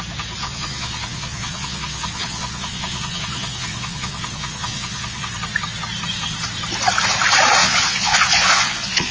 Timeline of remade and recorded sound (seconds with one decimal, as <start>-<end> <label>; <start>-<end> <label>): 0.0-0.4 recorded; 0.4-5.3 remade; 5.3-7.6 recorded; 7.6-9.1 remade